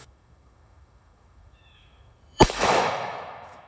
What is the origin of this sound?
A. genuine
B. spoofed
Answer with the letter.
B